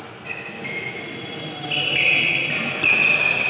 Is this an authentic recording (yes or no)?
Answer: yes